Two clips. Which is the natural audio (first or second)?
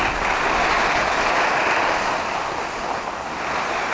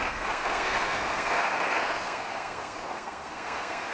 first